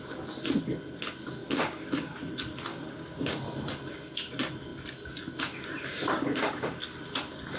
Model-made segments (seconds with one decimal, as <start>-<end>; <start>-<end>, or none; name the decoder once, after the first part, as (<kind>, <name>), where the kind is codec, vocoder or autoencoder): 1.4-2.3 (codec, DAC); 2.7-3.4; 5.9-6.8